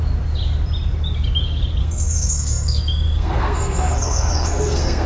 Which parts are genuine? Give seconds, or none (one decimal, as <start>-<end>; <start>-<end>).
0.0-1.8